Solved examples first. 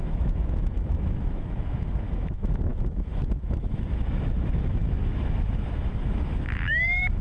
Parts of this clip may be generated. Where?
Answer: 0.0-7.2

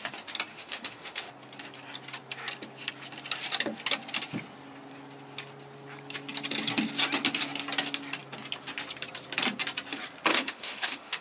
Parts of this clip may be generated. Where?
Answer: 0.5-1.3; 10.3-11.2

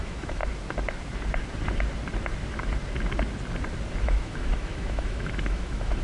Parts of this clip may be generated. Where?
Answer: 0.0-0.4; 4.0-6.0

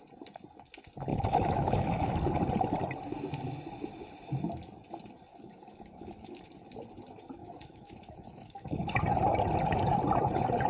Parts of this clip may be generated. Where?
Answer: 1.1-2.2; 5.3-6.4; 7.4-9.0

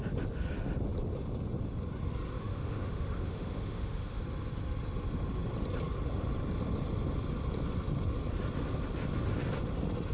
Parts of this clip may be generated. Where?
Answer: 2.4-4.2